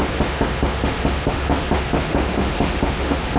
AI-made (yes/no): yes